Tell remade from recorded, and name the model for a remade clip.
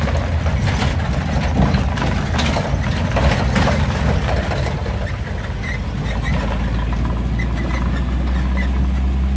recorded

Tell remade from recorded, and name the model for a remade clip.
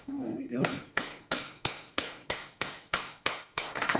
remade, codec, SNAC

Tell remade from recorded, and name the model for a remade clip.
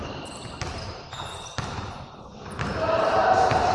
recorded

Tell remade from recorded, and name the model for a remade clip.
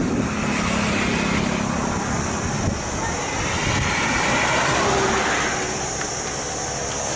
recorded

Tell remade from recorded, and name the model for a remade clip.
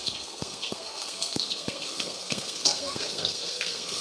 remade, codec, SNAC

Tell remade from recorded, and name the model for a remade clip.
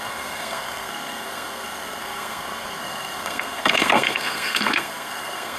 remade, codec, SNAC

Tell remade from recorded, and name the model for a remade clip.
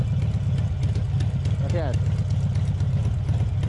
recorded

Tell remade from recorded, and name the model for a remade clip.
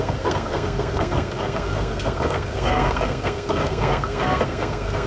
remade, codec, SNAC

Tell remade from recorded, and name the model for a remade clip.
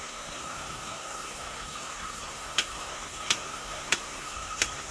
remade, codec, SNAC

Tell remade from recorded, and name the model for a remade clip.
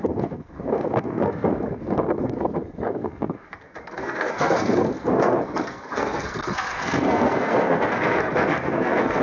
remade, codec, SNAC